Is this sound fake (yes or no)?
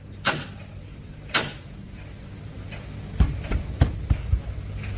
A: yes